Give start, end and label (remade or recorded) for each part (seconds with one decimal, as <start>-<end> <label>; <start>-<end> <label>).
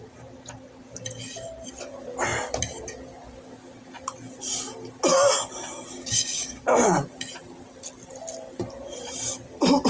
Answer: 0.0-5.9 recorded; 5.9-6.6 remade; 6.6-9.9 recorded